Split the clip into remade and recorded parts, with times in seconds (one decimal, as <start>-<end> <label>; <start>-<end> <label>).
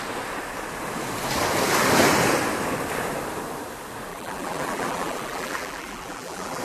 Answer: 0.0-4.1 recorded; 4.1-6.6 remade